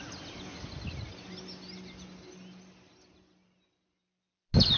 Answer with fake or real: real